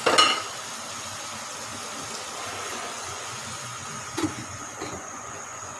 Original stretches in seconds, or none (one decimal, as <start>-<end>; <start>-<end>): 0.0-2.7